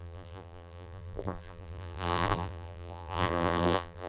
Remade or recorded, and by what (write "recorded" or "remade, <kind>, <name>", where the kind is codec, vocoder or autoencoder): remade, vocoder, BigVGAN v2